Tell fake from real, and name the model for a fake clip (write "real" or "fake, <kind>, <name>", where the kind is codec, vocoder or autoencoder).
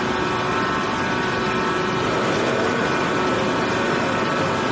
real